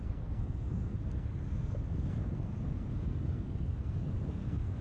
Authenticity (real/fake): fake